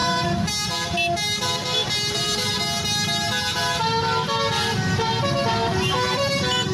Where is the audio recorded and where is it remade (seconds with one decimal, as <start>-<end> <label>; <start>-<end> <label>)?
0.0-0.5 remade; 0.5-1.8 recorded; 1.8-2.5 remade; 2.5-6.7 recorded